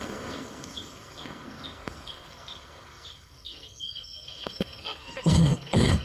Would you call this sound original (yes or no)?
no